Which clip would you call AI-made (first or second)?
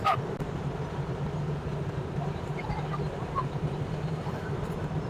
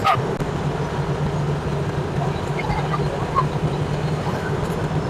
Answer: first